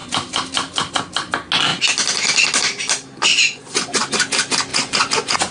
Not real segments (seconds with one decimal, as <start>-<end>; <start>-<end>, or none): 3.3-4.1; 4.7-5.5